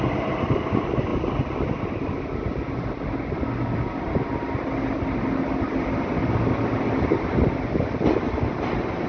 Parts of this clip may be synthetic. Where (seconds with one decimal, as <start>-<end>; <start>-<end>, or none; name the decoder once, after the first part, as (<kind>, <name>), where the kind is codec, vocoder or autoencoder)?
none